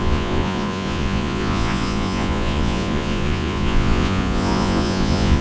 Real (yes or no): no